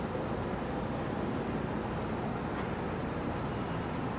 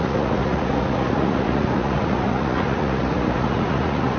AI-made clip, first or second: second